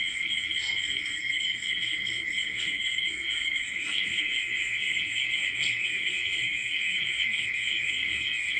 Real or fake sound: fake